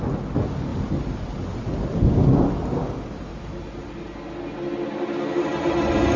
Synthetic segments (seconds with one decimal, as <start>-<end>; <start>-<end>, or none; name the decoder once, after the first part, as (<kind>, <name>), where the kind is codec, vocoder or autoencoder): none